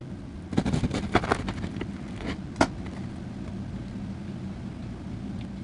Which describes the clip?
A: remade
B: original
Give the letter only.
B